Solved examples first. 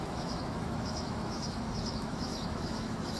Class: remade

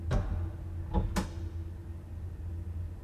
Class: recorded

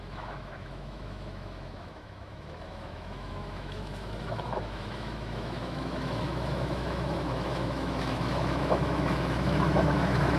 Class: remade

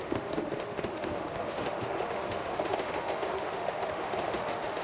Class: remade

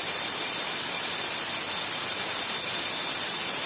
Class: recorded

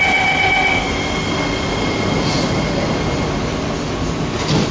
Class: recorded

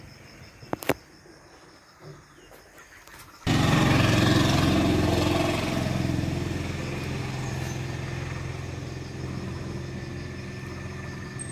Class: recorded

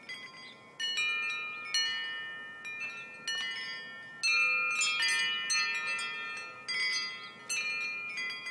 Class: recorded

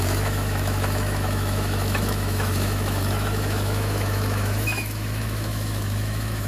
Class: remade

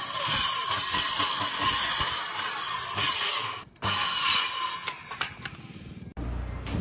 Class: recorded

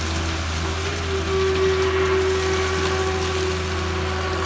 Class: recorded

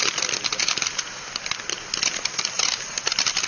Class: recorded